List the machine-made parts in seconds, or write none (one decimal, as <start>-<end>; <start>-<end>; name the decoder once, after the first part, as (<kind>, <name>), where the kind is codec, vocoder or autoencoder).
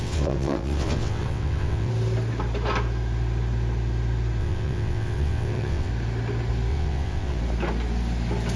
0.0-1.9 (vocoder, WaveNeXt); 4.4-5.9; 6.7-7.4